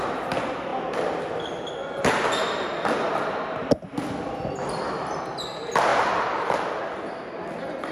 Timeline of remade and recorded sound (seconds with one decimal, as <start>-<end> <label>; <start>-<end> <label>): 0.0-7.9 recorded